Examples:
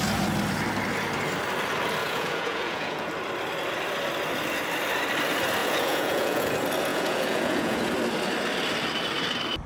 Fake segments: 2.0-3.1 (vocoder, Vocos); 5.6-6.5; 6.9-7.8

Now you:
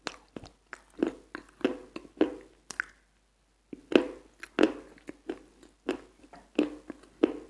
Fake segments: none

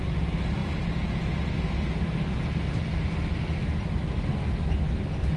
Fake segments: none

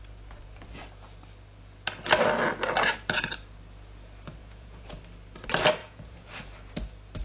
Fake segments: 4.4-5.0 (vocoder, Vocos); 5.8-6.3

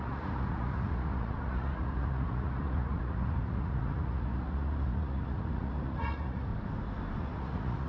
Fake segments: 0.0-6.5 (vocoder, Vocos); 7.2-7.9

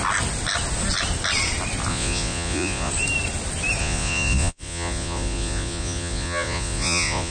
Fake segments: 1.9-2.9 (vocoder, Vocos); 3.8-7.3